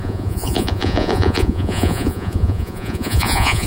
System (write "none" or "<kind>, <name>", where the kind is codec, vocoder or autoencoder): vocoder, Vocos